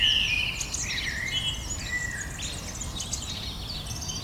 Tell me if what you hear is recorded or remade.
recorded